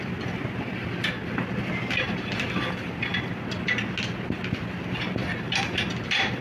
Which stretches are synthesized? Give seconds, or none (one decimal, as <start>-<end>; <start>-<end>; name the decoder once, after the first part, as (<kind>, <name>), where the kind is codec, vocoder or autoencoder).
5.2-6.4 (vocoder, BigVGAN v2)